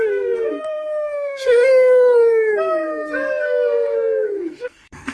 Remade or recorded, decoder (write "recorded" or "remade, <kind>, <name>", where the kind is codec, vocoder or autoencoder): remade, codec, SNAC